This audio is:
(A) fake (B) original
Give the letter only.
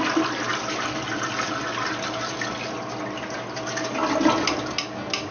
B